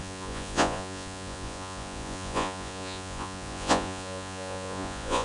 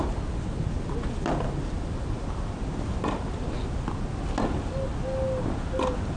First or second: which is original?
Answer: second